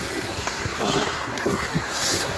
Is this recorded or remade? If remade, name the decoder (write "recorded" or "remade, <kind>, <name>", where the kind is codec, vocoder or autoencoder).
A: remade, codec, SNAC